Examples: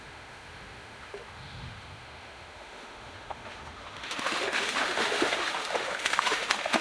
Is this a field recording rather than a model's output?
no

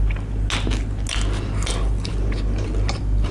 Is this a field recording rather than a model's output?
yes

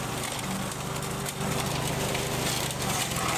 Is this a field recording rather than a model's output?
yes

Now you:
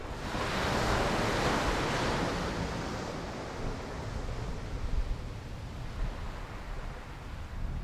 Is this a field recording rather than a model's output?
yes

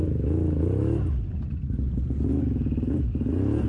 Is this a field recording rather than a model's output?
yes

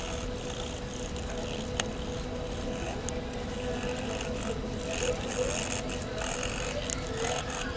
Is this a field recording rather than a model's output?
yes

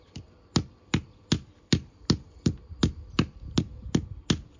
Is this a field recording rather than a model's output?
yes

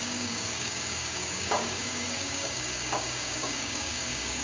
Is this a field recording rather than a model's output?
no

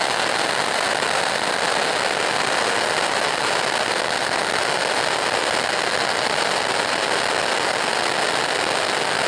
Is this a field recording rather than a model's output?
yes